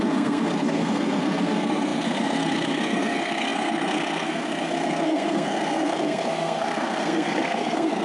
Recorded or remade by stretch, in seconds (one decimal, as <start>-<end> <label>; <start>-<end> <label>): 0.0-8.0 remade